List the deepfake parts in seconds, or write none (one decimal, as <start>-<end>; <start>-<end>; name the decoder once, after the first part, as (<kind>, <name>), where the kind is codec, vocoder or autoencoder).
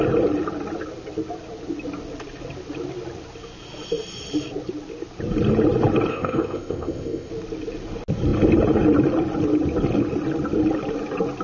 6.1-7.3 (codec, ZipCodec)